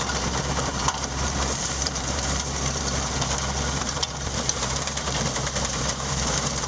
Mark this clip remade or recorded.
remade